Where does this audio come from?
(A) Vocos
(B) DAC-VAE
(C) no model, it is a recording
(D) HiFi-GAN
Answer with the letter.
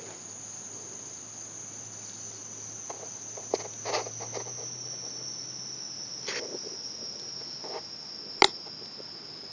C